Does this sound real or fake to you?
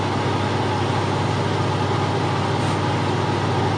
real